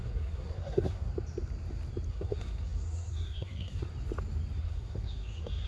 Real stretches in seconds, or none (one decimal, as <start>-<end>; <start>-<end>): 1.1-2.1; 3.9-4.6

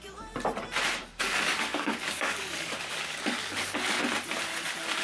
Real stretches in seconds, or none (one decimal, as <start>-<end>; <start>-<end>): 0.0-1.0; 4.0-5.0

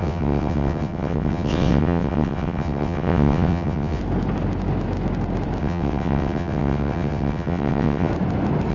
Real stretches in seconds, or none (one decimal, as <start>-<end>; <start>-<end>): 4.0-5.6; 8.1-8.7